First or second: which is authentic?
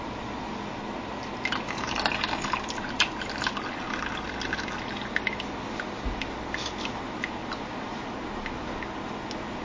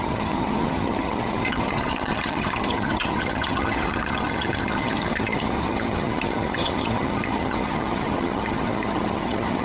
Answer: first